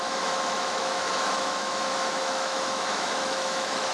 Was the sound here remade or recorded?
remade